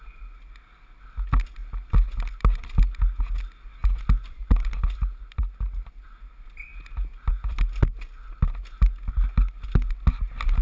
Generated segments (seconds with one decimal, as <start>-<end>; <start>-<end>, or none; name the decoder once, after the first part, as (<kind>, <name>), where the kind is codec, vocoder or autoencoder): none